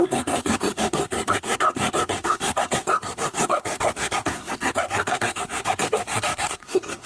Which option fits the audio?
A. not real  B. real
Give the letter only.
A